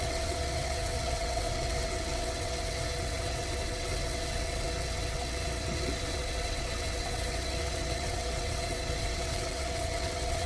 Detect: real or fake fake